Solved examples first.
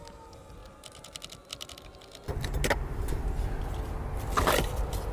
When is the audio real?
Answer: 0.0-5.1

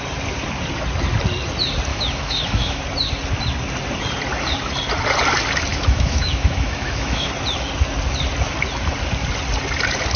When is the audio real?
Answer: 0.0-1.9; 2.8-5.7; 7.3-10.2

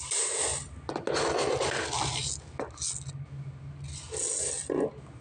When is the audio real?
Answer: 0.0-5.2

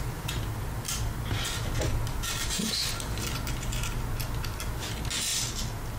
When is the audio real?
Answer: 0.0-6.0

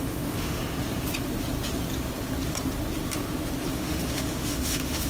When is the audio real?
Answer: 0.6-3.7